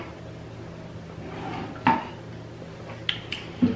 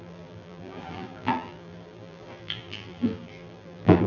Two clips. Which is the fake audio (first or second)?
second